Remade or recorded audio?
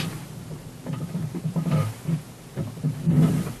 recorded